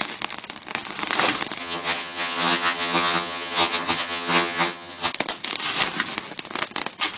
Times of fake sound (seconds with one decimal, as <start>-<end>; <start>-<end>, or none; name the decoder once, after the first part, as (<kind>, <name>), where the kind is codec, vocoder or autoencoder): 1.6-5.1 (vocoder, HiFi-GAN)